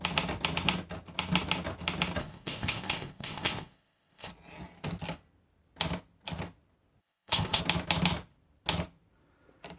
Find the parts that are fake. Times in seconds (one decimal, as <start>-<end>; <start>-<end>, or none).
2.2-4.3; 7.0-7.6